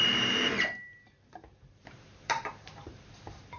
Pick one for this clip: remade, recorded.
remade